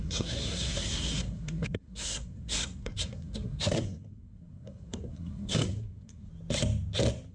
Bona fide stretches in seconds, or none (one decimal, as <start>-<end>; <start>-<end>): 6.3-7.3